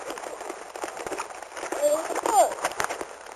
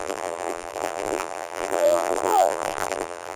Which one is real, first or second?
first